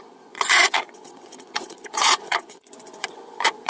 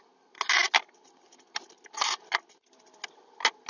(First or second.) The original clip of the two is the second